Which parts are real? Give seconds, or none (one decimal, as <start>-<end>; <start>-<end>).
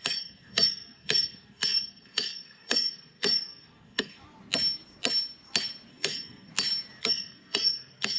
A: 4.2-5.9; 6.5-7.0